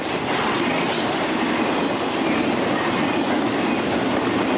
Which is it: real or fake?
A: real